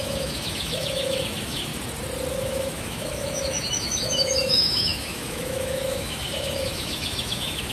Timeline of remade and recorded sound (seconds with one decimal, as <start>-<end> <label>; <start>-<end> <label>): 0.0-1.7 remade; 1.7-2.3 recorded; 2.3-7.7 remade